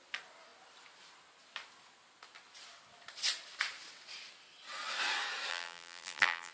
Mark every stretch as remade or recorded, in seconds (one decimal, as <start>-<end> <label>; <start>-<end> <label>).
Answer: 0.0-5.5 recorded; 5.5-6.5 remade